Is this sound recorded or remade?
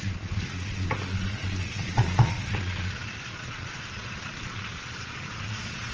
remade